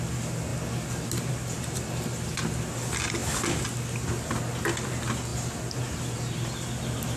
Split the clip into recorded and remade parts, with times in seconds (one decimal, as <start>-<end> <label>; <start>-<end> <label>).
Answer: 0.0-7.2 recorded